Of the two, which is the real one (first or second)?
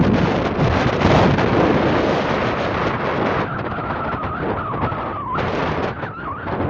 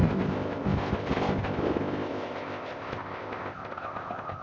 first